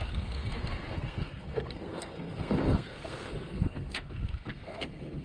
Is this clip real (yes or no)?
no